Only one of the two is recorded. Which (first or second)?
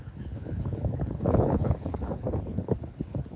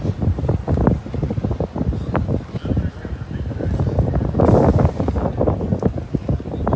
second